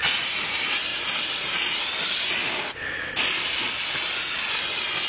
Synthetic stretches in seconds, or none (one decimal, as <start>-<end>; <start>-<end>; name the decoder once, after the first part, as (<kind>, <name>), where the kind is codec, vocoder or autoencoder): none